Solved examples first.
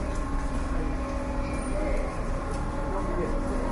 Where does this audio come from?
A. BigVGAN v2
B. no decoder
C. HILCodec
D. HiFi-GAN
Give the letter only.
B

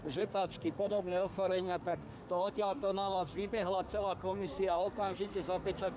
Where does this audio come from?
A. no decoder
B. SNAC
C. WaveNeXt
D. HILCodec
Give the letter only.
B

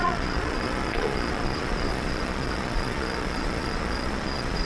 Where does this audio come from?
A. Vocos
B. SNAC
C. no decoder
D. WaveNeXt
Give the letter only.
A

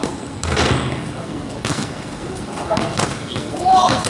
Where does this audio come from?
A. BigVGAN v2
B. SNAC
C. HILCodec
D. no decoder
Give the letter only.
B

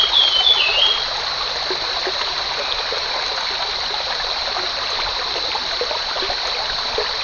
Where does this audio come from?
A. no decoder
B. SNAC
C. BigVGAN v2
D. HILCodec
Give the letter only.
A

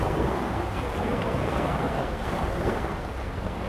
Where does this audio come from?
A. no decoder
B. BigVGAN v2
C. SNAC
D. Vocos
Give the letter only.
C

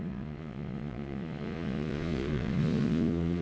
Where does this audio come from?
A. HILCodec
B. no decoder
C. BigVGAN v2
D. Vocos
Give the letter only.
D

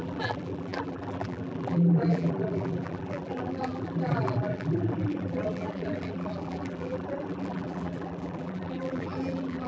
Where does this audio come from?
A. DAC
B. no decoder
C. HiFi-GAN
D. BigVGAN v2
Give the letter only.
D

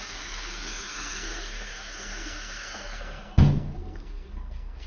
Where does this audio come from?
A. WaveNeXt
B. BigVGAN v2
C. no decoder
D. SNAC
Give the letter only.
D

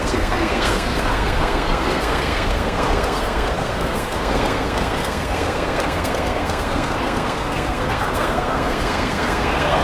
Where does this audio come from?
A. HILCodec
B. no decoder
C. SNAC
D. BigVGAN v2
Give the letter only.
C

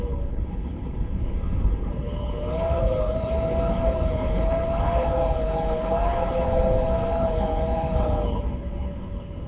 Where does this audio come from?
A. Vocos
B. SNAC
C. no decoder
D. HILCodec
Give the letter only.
D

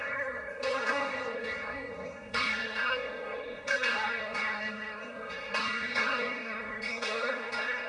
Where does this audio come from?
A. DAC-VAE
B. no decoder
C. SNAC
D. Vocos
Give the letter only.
C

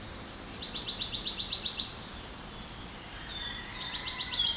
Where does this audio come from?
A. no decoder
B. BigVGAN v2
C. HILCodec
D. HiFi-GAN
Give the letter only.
B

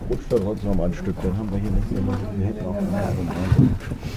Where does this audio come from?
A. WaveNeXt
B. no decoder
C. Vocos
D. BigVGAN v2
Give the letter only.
B